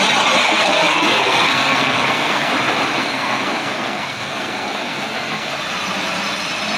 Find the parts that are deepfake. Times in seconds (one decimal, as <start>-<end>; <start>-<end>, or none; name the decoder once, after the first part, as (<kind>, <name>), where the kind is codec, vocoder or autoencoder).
0.4-2.5 (codec, SNAC); 3.0-5.5